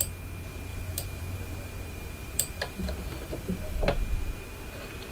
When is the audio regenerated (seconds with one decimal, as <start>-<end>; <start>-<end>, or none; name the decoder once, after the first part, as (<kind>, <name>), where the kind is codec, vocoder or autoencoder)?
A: 0.7-3.8 (vocoder, BigVGAN v2)

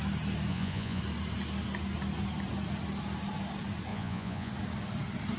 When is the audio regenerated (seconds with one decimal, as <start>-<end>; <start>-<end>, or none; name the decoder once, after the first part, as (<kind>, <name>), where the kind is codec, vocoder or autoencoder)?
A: 0.5-1.0 (vocoder, Vocos); 3.9-4.5

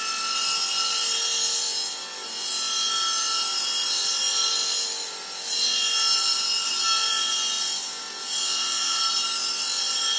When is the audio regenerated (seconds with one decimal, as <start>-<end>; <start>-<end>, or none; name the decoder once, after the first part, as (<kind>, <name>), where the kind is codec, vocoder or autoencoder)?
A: 8.4-9.0 (vocoder, Vocos)

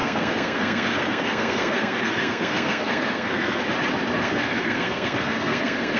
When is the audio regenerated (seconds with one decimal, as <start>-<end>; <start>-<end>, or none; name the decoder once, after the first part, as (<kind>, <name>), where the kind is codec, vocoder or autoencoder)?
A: 0.0-3.6 (codec, SNAC); 4.2-6.0

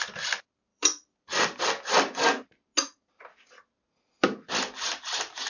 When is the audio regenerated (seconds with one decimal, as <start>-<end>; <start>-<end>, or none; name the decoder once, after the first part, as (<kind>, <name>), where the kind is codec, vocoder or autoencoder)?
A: 0.7-1.6 (vocoder, BigVGAN v2)

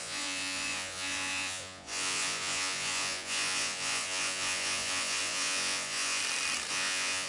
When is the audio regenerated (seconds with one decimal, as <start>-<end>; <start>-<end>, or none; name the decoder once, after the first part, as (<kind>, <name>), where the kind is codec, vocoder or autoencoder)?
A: 0.0-6.2 (vocoder, Vocos); 6.7-7.3

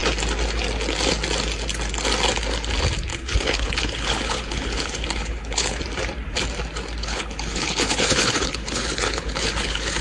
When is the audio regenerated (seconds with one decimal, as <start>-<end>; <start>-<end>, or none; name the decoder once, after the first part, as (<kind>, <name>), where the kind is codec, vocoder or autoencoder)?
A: 3.1-5.8 (codec, HILCodec); 7.0-10.0